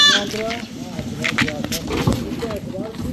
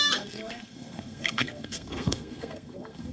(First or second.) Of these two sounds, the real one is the first